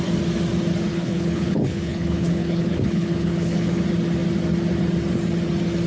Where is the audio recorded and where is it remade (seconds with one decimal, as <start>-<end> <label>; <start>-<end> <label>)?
0.0-0.9 recorded; 0.9-3.8 remade; 3.8-5.9 recorded